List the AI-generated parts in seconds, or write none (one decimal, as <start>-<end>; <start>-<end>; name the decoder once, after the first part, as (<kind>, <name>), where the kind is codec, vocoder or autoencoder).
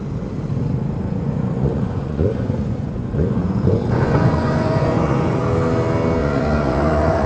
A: 1.0-5.4 (vocoder, Vocos); 6.2-7.3